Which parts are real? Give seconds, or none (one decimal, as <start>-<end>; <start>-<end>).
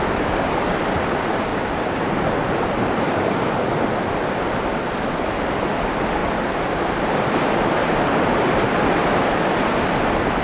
0.0-6.2; 7.0-10.4